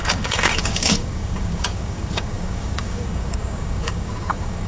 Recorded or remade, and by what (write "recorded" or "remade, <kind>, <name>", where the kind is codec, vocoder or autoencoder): remade, codec, DAC